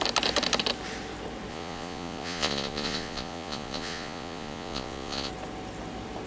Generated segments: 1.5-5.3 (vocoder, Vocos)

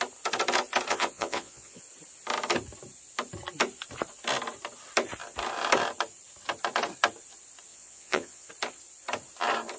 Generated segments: 0.9-1.8 (vocoder, Vocos); 7.7-8.5